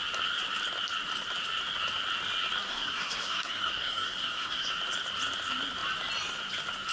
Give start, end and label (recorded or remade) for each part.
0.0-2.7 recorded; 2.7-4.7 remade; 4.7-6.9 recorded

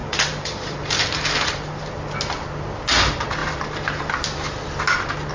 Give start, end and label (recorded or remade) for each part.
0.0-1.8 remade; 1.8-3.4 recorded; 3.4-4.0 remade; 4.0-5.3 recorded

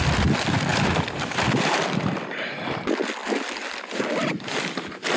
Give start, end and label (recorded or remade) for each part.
0.0-0.7 recorded; 0.7-2.8 remade; 2.8-3.2 recorded; 3.2-5.2 remade

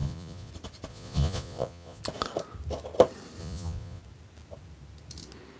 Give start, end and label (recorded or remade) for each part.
0.0-0.5 remade; 0.5-0.9 recorded; 0.9-2.0 remade; 2.0-3.4 recorded; 3.4-4.0 remade; 4.0-5.6 recorded